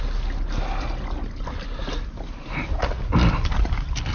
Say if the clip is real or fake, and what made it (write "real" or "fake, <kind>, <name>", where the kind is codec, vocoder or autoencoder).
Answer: real